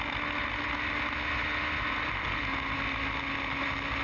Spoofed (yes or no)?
no